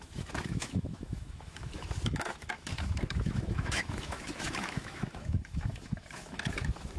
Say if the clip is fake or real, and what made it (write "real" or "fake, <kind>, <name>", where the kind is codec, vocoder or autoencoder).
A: fake, autoencoder, DAC-VAE